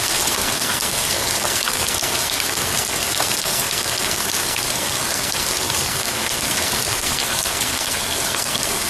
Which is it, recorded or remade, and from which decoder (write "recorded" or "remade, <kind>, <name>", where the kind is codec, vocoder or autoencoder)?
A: remade, codec, SNAC